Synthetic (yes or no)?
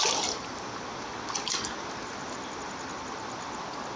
no